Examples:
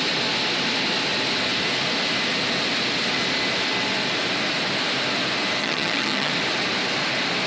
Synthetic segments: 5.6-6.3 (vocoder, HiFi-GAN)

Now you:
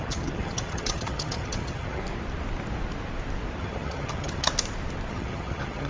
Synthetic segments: 0.0-2.0 (vocoder, HiFi-GAN); 3.6-4.5; 5.1-5.9

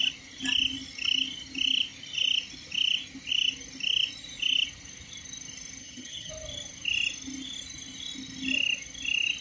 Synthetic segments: 5.8-6.3 (vocoder, HiFi-GAN)

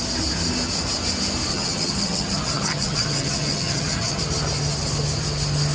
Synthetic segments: 1.5-4.2 (vocoder, HiFi-GAN)

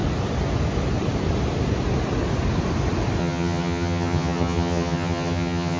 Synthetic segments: 3.2-5.8 (vocoder, HiFi-GAN)

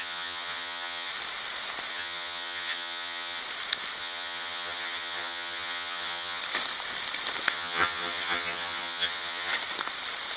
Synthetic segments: 0.0-1.1 (vocoder, HiFi-GAN); 1.9-3.4; 4.0-6.4; 7.5-9.5

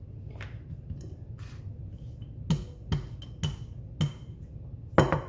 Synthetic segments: none